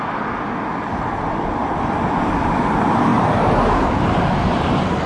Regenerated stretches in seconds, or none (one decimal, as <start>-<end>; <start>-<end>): 1.6-2.2